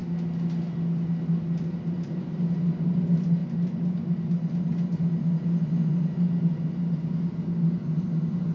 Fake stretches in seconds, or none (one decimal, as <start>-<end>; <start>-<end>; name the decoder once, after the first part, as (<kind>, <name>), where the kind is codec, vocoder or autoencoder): none